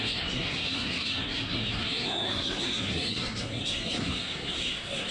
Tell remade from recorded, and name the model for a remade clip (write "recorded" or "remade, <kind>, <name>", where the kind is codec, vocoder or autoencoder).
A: remade, codec, SNAC